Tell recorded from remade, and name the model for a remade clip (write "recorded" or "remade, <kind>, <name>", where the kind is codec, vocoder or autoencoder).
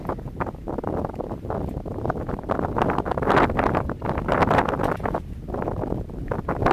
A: recorded